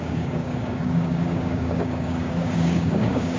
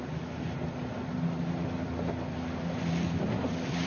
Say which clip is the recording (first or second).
second